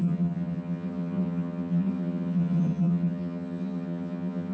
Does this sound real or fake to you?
fake